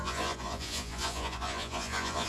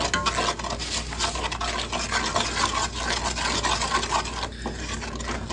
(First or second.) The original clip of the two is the second